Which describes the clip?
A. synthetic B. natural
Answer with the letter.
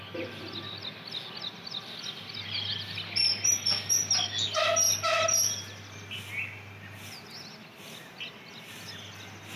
B